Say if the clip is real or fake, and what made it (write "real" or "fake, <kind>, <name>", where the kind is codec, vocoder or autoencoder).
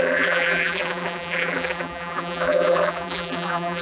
fake, vocoder, BigVGAN v2